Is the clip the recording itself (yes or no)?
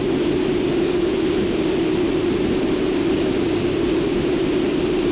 yes